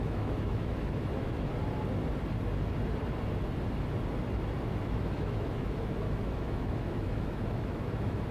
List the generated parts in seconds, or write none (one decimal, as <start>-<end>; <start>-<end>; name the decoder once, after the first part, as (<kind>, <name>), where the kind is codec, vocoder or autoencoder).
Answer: 0.0-1.5 (autoencoder, DAC-VAE); 4.8-8.3